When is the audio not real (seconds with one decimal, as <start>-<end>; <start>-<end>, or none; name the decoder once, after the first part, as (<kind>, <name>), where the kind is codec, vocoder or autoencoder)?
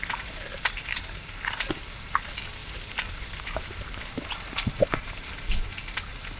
none